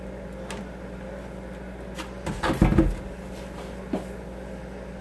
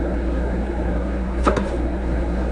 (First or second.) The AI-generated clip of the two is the second